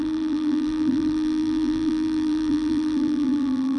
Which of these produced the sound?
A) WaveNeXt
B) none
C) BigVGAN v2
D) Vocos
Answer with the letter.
C